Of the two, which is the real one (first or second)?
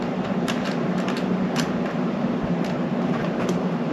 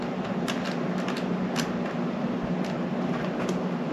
second